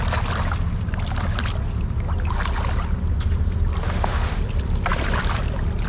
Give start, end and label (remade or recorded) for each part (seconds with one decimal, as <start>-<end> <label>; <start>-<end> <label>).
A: 0.0-3.8 recorded; 3.8-4.4 remade; 4.4-5.9 recorded